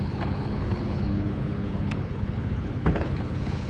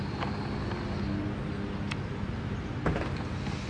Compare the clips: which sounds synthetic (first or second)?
first